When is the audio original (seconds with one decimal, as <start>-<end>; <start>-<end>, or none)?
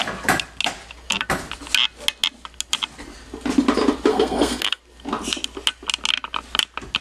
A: 0.0-4.1; 4.8-7.0